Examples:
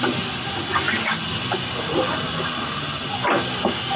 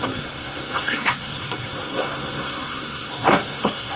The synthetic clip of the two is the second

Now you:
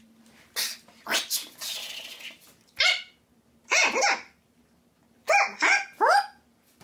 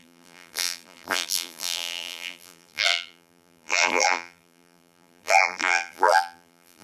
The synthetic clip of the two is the second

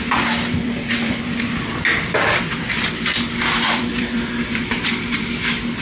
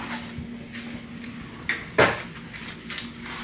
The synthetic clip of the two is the first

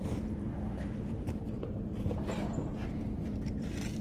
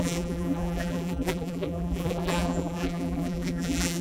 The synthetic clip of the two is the second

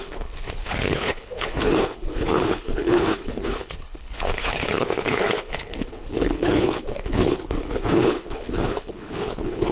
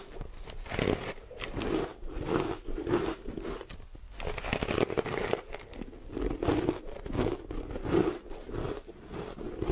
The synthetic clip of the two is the first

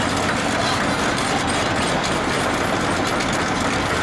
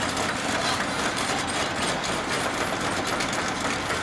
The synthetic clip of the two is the second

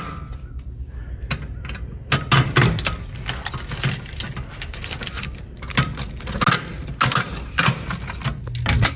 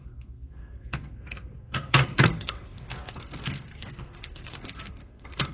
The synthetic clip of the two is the second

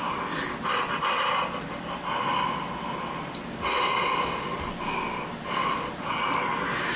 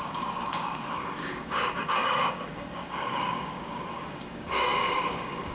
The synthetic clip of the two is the second